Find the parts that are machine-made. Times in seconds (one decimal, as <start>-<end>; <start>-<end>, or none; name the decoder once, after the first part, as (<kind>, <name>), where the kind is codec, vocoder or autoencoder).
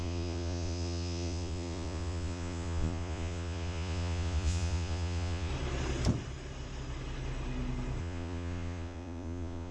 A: 0.0-5.5 (vocoder, Vocos); 8.0-9.7